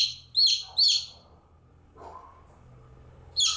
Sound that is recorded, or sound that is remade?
recorded